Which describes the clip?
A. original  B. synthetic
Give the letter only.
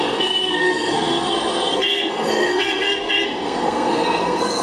B